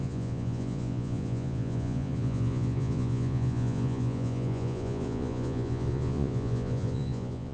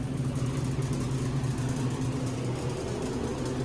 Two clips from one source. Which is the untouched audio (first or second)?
second